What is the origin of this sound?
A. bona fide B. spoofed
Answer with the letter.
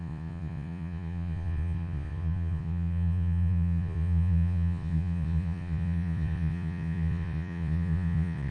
B